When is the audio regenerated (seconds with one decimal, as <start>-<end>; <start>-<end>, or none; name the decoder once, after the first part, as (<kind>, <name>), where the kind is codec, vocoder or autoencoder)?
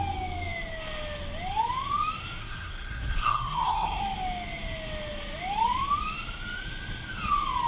2.4-4.0 (codec, SNAC)